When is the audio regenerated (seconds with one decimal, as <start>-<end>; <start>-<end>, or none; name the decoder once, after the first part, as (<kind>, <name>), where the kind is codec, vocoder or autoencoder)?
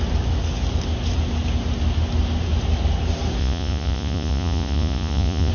3.4-5.5 (vocoder, Vocos)